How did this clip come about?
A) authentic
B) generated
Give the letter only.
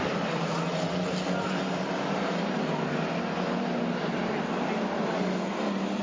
A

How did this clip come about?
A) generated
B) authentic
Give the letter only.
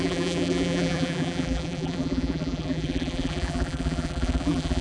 A